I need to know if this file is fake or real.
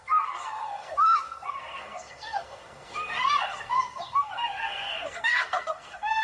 fake